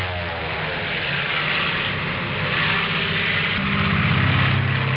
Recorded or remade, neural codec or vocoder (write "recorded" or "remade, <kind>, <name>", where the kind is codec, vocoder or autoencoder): recorded